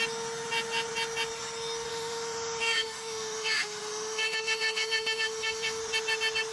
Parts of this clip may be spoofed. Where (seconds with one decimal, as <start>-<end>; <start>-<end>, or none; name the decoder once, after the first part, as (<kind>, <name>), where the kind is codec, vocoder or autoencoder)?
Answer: 1.9-5.8 (autoencoder, DAC-VAE)